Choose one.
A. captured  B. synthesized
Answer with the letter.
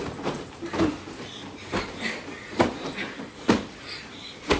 A